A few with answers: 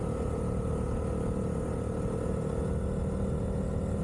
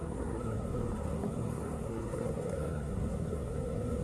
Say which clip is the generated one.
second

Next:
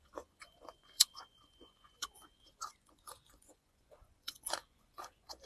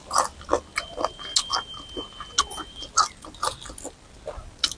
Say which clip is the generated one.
first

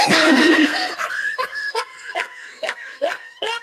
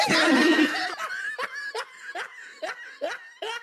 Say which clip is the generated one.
first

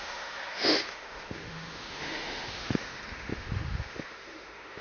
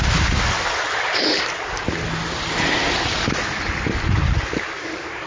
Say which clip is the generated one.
first